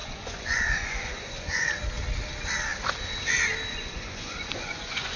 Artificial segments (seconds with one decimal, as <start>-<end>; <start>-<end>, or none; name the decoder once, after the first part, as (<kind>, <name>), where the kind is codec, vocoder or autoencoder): 0.0-1.7 (vocoder, Vocos); 3.7-5.2